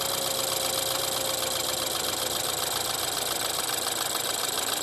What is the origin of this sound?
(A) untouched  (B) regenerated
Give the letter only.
A